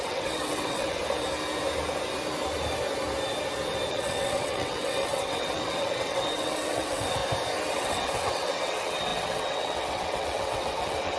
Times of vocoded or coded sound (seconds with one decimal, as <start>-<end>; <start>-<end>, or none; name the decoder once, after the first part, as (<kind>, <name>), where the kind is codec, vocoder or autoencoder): 0.0-1.0 (vocoder, WaveNeXt); 3.9-7.2; 7.7-11.2